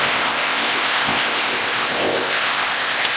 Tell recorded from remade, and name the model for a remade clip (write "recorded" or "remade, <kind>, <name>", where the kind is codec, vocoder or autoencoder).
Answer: remade, codec, ZipCodec